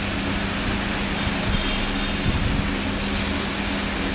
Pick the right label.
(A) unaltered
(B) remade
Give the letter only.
A